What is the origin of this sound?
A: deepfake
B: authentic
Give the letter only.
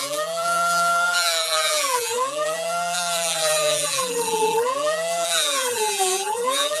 A